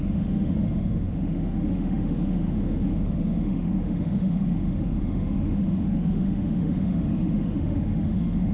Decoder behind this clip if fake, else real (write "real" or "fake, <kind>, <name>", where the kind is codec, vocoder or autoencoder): fake, autoencoder, DAC-VAE